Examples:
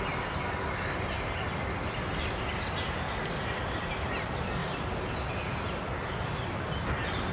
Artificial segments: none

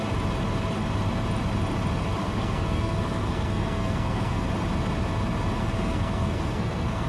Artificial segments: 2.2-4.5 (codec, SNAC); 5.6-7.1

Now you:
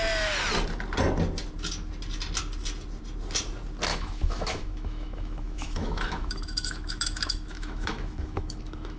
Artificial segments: 3.9-9.0 (autoencoder, DAC-VAE)

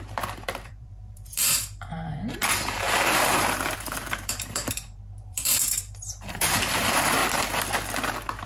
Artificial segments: 0.0-7.2 (vocoder, BigVGAN v2)

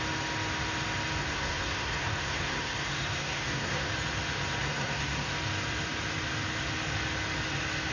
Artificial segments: 1.2-3.9 (codec, SNAC); 4.6-5.3